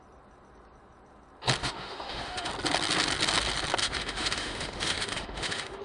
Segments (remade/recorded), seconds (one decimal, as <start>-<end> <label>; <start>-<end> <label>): 0.0-1.6 recorded; 1.6-2.5 remade; 2.5-3.8 recorded; 3.8-5.8 remade

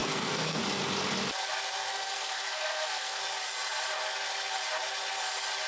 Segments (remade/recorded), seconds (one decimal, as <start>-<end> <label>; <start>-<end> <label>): 0.0-0.6 remade; 0.6-1.9 recorded; 1.9-3.2 remade; 3.2-5.7 recorded